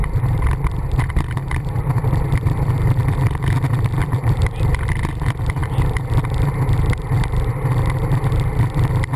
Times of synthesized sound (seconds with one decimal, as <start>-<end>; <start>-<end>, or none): 4.0-4.6